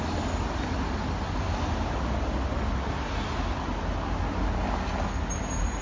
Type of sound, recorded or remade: recorded